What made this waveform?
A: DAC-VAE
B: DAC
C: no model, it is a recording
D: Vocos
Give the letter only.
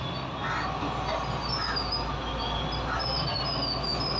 C